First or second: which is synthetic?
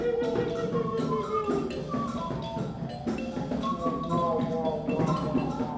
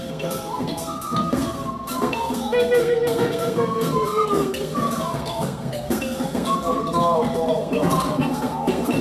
second